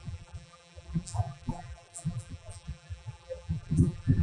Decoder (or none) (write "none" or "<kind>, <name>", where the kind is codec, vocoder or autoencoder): vocoder, BigVGAN v2